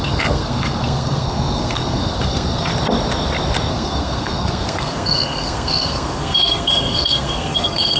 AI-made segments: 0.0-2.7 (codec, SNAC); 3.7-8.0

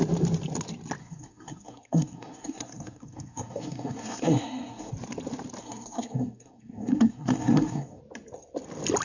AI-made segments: 1.0-4.9 (codec, SNAC); 5.6-8.0

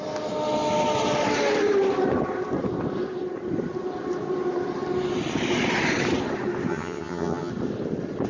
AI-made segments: 6.7-7.5 (vocoder, HiFi-GAN)